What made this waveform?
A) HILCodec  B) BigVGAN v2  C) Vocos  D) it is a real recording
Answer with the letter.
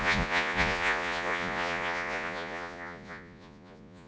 C